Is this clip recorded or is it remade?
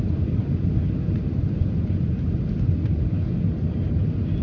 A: recorded